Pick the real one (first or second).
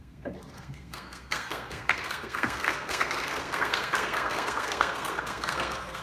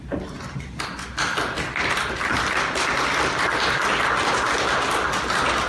second